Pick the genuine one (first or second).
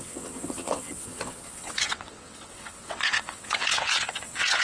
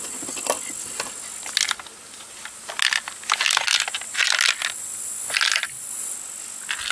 second